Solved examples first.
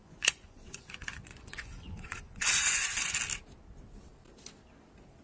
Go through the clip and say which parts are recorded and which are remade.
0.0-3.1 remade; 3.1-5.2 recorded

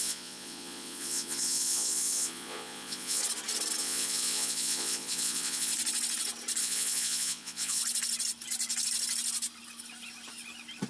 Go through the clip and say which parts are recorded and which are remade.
0.0-3.2 remade; 3.2-3.8 recorded; 3.8-5.7 remade; 5.7-6.6 recorded; 6.6-7.8 remade; 7.8-10.9 recorded

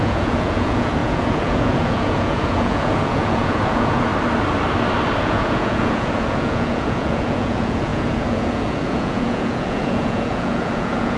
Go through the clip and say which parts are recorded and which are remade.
0.0-4.1 remade; 4.1-5.2 recorded; 5.2-11.2 remade

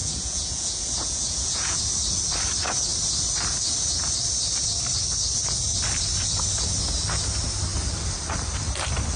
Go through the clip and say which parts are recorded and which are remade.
0.0-1.8 remade; 1.8-9.2 recorded